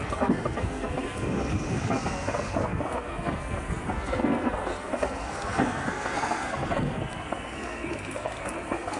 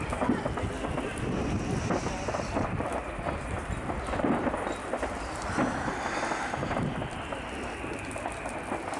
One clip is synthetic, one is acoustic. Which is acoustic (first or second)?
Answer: second